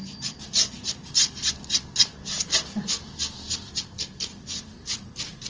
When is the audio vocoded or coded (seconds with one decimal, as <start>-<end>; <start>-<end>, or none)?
none